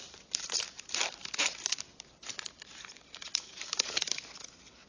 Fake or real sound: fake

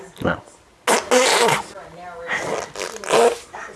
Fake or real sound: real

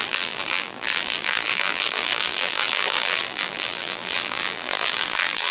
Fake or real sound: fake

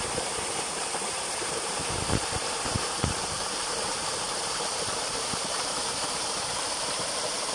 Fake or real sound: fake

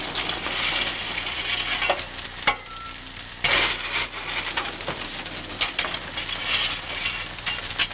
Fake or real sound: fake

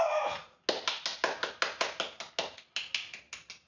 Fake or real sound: real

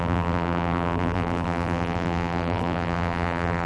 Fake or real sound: fake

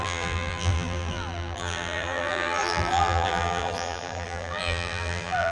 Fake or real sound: fake